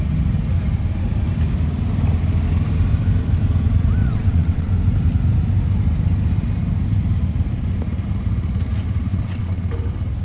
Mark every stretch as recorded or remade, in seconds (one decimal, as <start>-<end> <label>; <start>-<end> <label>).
0.0-4.0 recorded; 4.0-4.7 remade; 4.7-9.1 recorded; 9.1-9.7 remade; 9.7-10.2 recorded